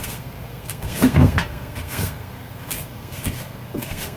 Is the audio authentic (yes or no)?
no